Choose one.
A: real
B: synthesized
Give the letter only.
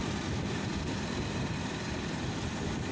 A